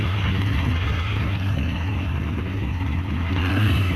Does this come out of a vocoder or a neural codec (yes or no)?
yes